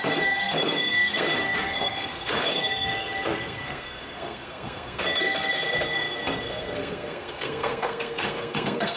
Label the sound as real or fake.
fake